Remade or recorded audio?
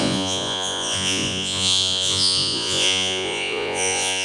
remade